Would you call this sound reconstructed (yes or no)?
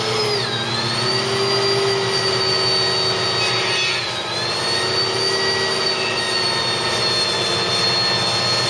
no